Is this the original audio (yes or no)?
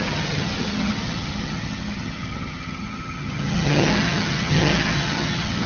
no